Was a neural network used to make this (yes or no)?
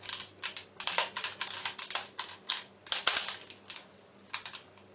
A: no